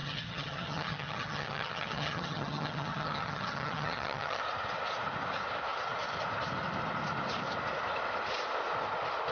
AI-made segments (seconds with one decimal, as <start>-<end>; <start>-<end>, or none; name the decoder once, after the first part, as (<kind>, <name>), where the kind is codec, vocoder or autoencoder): 0.0-4.4 (vocoder, HiFi-GAN)